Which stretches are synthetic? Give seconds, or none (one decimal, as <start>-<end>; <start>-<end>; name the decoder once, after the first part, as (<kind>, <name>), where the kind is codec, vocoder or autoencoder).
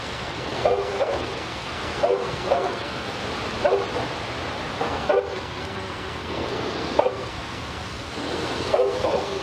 0.0-3.2 (codec, SNAC); 4.8-9.4